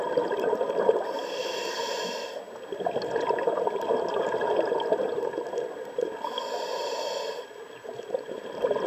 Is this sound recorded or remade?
recorded